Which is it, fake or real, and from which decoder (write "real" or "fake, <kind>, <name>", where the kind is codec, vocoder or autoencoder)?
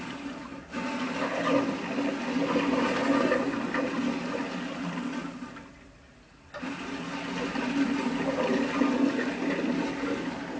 real